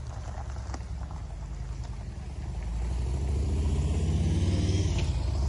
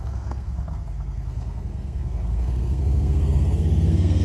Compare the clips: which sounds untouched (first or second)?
first